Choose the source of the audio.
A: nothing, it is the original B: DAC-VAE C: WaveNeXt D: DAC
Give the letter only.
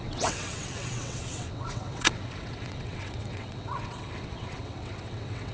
C